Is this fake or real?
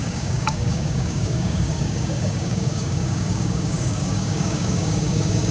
fake